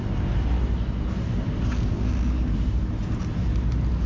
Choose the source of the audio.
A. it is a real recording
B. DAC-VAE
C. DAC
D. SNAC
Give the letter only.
A